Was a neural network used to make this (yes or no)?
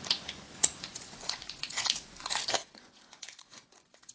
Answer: yes